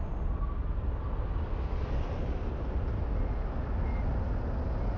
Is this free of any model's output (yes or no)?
yes